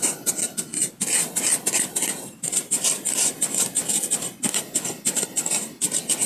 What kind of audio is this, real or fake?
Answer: real